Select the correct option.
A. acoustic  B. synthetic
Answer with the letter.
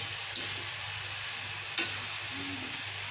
A